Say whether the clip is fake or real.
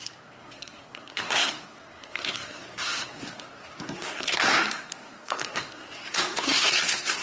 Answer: fake